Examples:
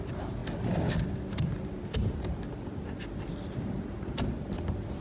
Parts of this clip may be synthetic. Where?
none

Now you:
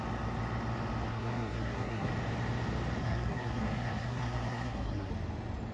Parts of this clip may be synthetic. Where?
1.1-2.1 (codec, SNAC); 3.0-5.1

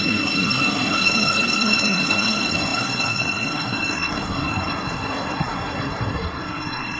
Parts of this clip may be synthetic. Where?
0.0-7.0 (codec, SNAC)

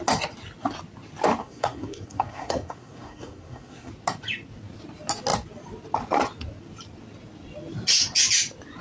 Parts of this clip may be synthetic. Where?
1.4-3.9 (codec, SNAC)

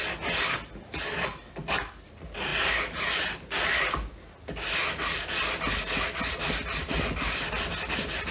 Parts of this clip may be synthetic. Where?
none

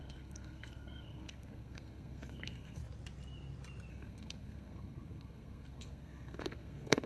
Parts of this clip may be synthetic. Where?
0.0-2.8 (codec, SNAC); 3.9-7.1

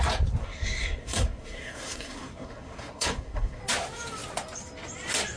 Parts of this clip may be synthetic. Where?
0.4-3.6 (codec, SNAC)

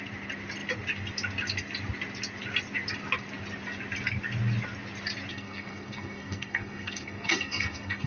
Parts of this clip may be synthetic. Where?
5.3-8.1 (codec, SNAC)